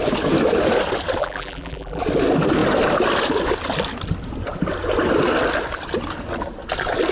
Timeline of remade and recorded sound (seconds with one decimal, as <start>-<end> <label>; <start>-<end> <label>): 0.0-1.2 recorded; 1.2-2.0 remade; 2.0-7.1 recorded